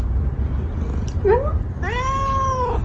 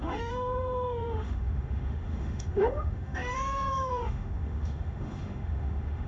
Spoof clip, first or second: second